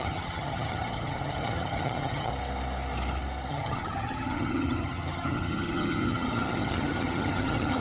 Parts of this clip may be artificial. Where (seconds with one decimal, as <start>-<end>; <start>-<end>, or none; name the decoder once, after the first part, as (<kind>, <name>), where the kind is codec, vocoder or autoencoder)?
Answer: 0.0-2.3 (vocoder, HiFi-GAN); 3.5-7.8